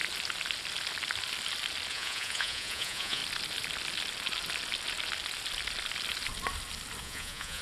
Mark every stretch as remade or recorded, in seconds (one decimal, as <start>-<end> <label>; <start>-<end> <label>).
0.0-1.9 recorded; 1.9-3.2 remade; 3.2-7.0 recorded; 7.0-7.6 remade